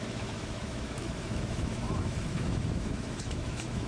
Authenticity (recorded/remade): remade